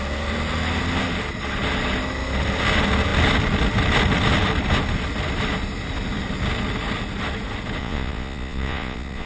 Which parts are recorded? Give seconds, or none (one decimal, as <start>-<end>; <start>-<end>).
0.0-7.8